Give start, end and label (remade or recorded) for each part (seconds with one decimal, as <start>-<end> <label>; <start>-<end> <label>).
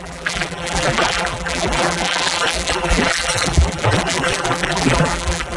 0.0-5.6 remade